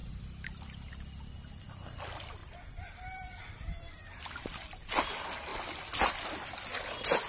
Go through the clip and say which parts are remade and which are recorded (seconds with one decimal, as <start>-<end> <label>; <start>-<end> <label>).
0.0-0.9 remade; 0.9-2.4 recorded; 2.4-5.0 remade; 5.0-7.3 recorded